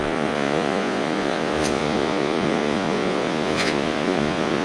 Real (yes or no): no